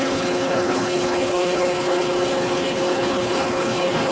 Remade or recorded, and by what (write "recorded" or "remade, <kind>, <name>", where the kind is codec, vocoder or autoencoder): remade, codec, HILCodec